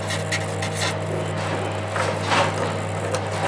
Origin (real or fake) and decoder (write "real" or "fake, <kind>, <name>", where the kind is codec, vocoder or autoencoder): real